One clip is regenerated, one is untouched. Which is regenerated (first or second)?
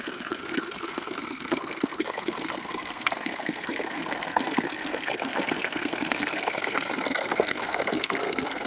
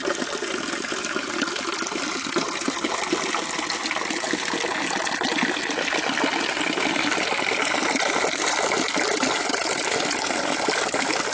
first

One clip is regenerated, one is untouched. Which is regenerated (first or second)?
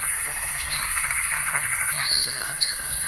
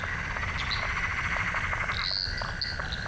first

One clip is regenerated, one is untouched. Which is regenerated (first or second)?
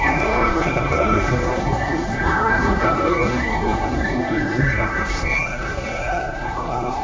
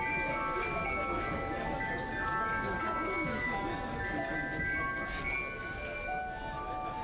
first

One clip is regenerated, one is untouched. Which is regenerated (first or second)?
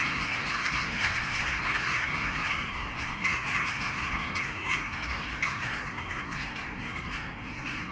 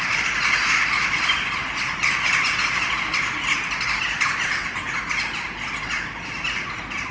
first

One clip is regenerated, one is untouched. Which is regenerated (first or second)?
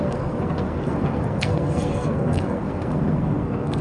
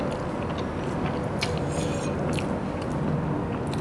first